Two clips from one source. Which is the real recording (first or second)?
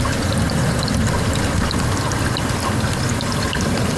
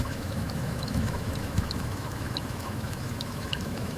first